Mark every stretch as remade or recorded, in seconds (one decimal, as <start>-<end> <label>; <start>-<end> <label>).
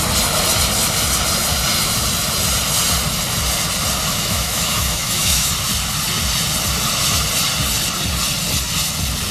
0.0-4.1 recorded; 4.1-5.5 remade; 5.5-9.3 recorded